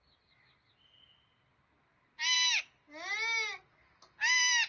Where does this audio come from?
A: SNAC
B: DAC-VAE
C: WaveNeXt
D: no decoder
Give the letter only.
D